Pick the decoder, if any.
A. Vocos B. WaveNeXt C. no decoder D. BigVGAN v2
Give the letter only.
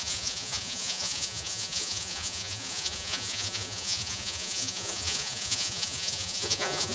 A